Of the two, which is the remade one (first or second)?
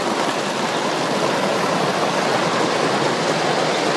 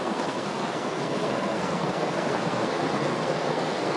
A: second